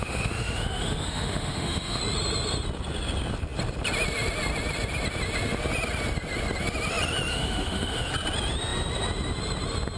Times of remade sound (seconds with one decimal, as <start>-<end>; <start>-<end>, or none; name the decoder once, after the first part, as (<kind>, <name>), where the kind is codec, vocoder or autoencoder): 0.0-2.0 (autoencoder, DAC-VAE); 7.3-8.1